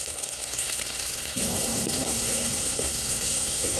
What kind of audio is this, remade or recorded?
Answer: remade